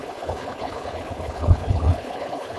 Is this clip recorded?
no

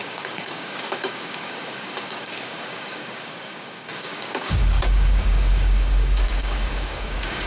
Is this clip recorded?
no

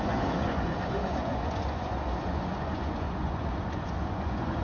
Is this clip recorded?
no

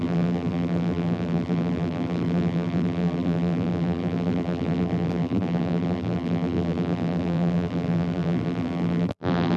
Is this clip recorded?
no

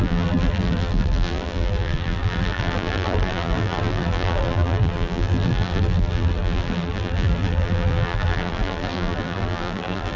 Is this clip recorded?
no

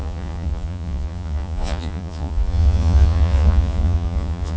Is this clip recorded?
no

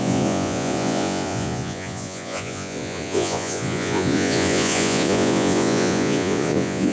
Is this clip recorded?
no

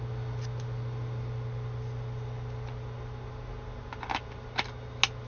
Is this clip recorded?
yes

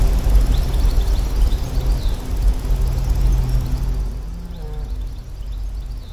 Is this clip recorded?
yes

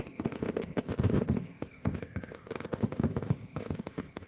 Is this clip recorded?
no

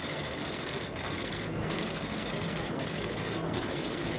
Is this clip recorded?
no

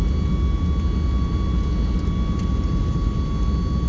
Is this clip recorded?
yes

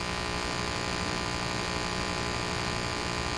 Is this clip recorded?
yes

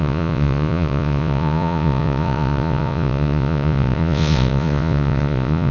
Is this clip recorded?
no